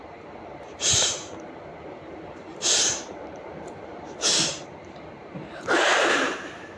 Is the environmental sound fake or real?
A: fake